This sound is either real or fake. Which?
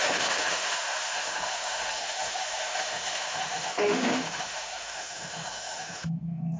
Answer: fake